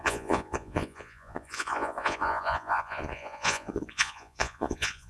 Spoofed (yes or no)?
yes